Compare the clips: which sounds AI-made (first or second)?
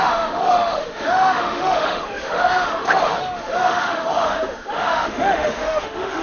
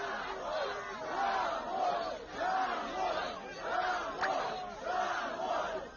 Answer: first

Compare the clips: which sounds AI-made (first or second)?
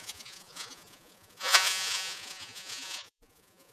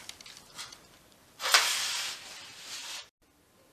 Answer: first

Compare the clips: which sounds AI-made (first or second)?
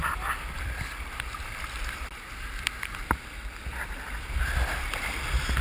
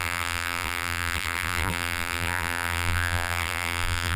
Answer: second